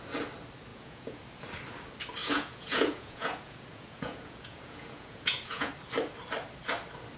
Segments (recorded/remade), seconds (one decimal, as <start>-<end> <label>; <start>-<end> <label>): 0.0-0.7 recorded; 0.7-1.2 remade; 1.2-2.2 recorded; 2.2-5.7 remade; 5.7-7.2 recorded